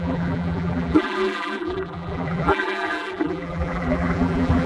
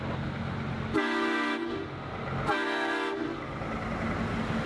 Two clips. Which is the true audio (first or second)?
second